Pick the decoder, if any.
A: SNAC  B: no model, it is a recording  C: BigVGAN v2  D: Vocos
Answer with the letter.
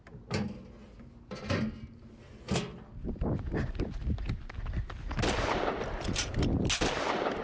B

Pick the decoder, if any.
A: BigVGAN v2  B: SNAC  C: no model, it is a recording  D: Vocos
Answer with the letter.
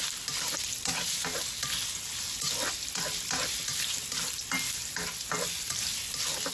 C